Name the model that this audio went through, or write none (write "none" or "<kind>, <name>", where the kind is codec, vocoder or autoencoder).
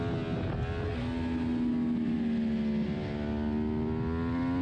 none